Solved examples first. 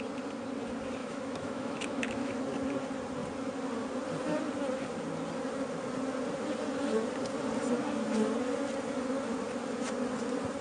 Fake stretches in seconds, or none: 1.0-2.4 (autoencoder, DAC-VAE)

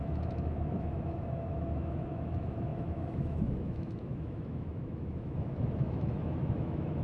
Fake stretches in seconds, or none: 0.0-7.0 (autoencoder, DAC-VAE)

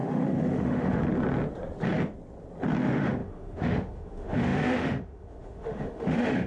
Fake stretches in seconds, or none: 0.0-1.0 (autoencoder, DAC-VAE); 2.8-6.5

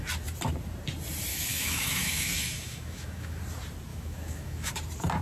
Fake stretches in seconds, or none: 1.3-3.4 (autoencoder, DAC-VAE); 3.9-4.7

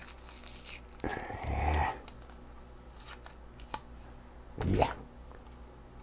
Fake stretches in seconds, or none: none

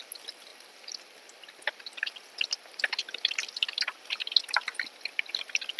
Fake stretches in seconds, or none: none